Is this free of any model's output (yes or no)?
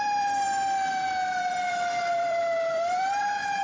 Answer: no